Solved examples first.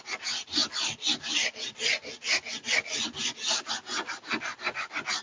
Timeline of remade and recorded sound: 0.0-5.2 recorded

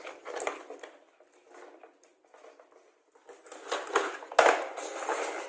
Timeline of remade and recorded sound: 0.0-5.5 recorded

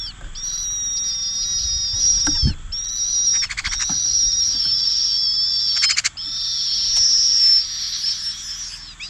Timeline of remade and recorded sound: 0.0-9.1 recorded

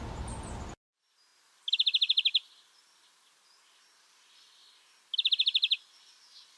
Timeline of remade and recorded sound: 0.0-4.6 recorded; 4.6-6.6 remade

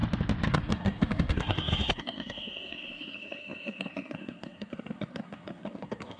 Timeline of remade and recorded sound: 0.0-0.5 recorded; 0.5-6.2 remade

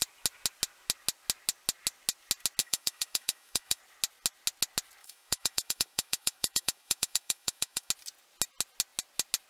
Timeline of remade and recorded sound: 0.0-2.6 recorded; 2.6-3.8 remade; 3.8-5.0 recorded; 5.0-7.9 remade; 7.9-9.5 recorded